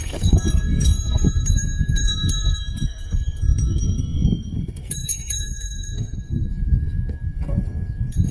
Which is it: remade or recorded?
remade